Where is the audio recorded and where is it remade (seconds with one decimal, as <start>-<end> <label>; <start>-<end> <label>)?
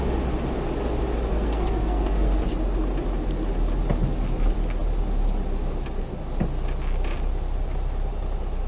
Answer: 0.0-1.3 recorded; 1.3-2.4 remade; 2.4-8.7 recorded